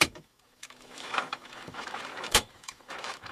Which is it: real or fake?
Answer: fake